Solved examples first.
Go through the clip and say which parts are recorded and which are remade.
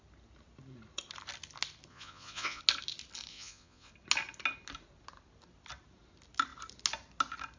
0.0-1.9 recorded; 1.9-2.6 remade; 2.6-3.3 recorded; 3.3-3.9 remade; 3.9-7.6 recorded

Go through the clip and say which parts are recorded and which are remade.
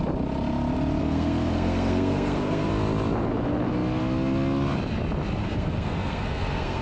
0.0-1.0 recorded; 1.0-2.7 remade; 2.7-5.4 recorded; 5.4-6.8 remade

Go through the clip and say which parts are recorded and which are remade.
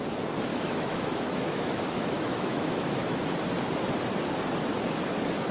0.0-0.5 recorded; 0.5-3.2 remade; 3.2-5.5 recorded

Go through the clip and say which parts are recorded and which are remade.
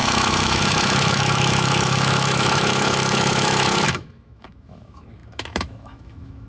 0.0-6.5 remade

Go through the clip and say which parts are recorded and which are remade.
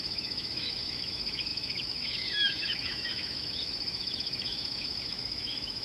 0.0-5.8 remade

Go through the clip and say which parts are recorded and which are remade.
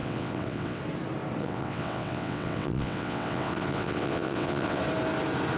0.0-0.8 remade; 0.8-1.4 recorded; 1.4-4.8 remade; 4.8-5.6 recorded